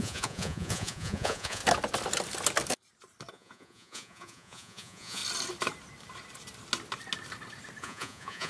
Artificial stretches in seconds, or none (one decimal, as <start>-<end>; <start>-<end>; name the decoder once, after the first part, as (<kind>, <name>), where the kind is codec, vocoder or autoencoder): 0.0-1.6 (vocoder, Vocos); 3.3-5.2; 7.8-8.5